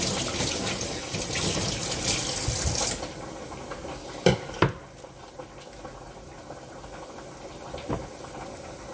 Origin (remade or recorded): recorded